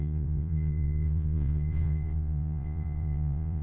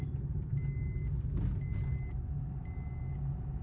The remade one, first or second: first